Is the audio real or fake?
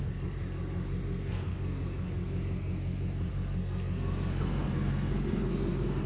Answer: fake